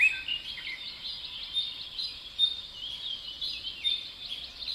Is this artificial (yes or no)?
no